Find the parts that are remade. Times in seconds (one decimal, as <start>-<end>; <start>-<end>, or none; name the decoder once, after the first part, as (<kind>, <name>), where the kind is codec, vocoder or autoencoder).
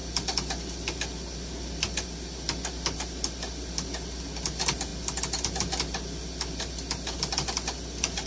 none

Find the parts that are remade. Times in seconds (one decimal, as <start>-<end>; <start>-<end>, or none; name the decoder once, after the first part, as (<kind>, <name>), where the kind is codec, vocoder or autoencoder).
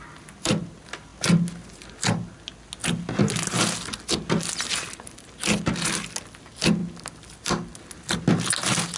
none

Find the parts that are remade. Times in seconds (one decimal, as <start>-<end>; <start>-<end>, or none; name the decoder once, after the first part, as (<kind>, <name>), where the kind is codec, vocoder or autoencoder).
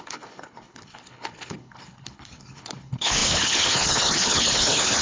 0.0-5.0 (codec, HILCodec)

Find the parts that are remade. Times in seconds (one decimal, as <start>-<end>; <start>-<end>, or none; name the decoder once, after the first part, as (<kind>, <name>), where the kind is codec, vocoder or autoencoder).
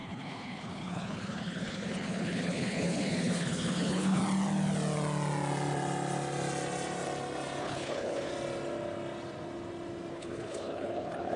0.0-4.2 (codec, HILCodec); 7.6-8.3; 10.1-11.4